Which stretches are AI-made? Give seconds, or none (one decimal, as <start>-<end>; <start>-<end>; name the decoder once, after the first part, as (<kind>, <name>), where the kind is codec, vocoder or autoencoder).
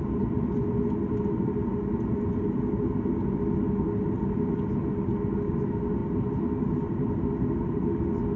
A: none